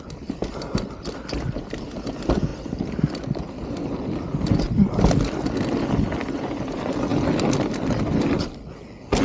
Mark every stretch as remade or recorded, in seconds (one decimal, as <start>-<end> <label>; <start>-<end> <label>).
0.0-9.2 recorded